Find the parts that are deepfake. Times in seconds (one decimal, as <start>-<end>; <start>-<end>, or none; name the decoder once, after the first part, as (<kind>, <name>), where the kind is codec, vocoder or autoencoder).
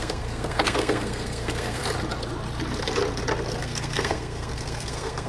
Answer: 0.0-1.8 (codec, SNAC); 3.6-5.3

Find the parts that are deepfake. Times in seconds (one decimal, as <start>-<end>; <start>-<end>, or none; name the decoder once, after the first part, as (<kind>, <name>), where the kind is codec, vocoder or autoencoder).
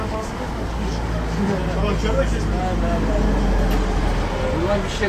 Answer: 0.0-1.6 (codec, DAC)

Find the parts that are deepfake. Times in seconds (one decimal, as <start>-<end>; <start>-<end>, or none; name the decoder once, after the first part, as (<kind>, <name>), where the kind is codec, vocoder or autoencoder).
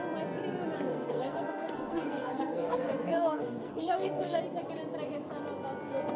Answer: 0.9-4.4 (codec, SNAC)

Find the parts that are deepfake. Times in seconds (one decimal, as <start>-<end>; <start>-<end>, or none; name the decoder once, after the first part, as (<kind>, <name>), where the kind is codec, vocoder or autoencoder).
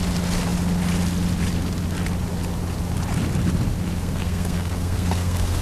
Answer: 4.0-5.6 (codec, SNAC)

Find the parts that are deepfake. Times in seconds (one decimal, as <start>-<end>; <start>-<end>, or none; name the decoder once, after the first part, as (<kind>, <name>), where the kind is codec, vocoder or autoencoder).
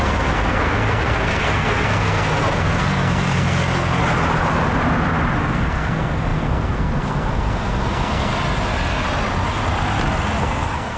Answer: 0.0-4.0 (codec, SNAC); 5.4-8.3; 10.4-11.0